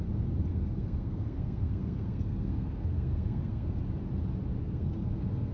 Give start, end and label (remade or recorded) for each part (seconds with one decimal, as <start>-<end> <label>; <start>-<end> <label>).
0.0-0.5 recorded; 0.5-3.8 remade; 3.8-4.6 recorded; 4.6-5.5 remade